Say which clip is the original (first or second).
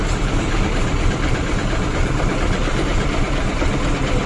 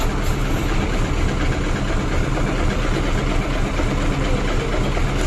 second